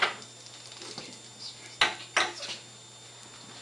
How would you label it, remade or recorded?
recorded